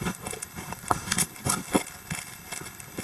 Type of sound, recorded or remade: remade